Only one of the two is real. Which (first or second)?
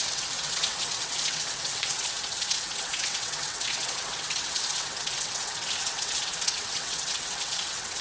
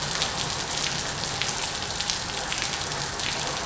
second